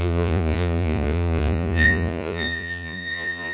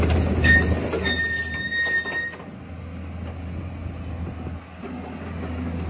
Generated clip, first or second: first